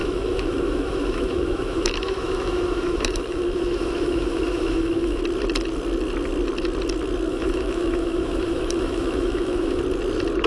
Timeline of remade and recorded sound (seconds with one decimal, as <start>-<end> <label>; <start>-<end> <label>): 0.0-5.2 remade; 5.2-7.3 recorded; 7.3-9.8 remade; 9.8-10.5 recorded

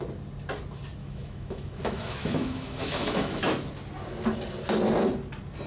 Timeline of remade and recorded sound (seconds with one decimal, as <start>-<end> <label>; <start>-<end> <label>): 0.0-1.0 recorded; 1.0-3.5 remade; 3.5-5.7 recorded

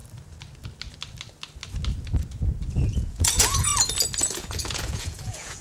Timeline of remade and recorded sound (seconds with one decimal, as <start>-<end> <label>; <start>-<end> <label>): 0.0-2.7 recorded; 2.7-3.7 remade; 3.7-4.2 recorded; 4.2-5.6 remade